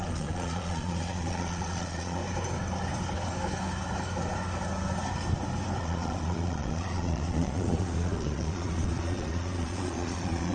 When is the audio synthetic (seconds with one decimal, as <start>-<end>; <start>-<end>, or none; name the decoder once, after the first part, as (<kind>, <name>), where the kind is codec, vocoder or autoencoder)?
0.0-2.2 (vocoder, Vocos); 5.8-10.5